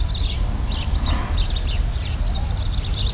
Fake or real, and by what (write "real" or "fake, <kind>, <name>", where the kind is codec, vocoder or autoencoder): real